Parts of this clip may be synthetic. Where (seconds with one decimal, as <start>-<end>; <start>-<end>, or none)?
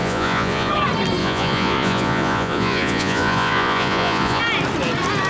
0.0-0.7; 1.2-4.4